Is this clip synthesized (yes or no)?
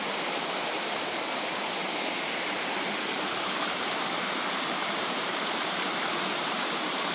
yes